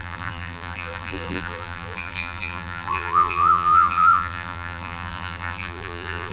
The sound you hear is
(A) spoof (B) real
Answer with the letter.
A